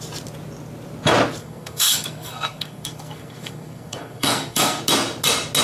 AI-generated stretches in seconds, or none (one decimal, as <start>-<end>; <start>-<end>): 1.4-4.8